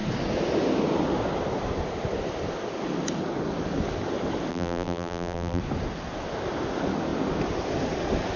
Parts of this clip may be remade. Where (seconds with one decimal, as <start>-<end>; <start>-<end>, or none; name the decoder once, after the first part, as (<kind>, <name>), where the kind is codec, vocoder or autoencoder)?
4.5-5.6 (vocoder, BigVGAN v2)